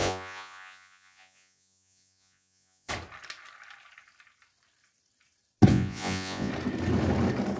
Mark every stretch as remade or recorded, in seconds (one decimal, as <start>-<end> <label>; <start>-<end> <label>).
0.0-2.9 remade; 2.9-5.7 recorded; 5.7-6.5 remade; 6.5-7.6 recorded